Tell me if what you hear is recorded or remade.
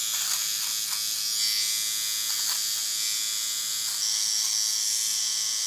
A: recorded